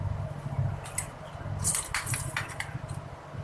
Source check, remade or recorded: recorded